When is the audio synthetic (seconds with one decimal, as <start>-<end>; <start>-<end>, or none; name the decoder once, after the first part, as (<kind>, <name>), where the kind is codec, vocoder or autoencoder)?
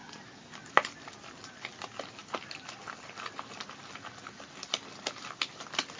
2.2-5.6 (vocoder, BigVGAN v2)